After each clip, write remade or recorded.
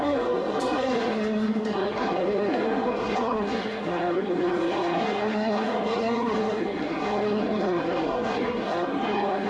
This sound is remade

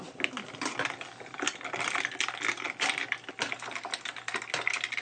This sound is recorded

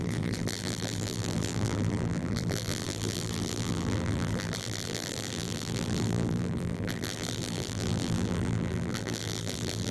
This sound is remade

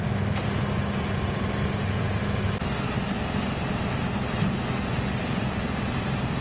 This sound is recorded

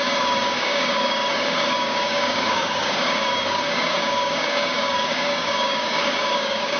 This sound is remade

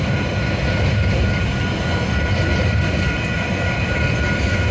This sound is remade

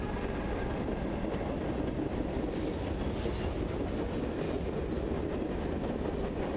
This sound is recorded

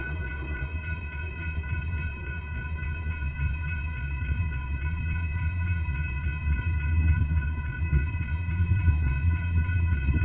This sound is remade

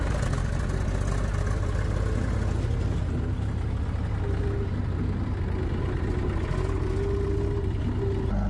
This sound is recorded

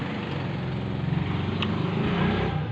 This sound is recorded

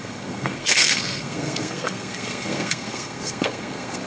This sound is remade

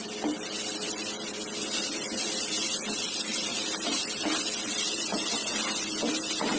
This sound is recorded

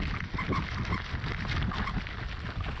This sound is recorded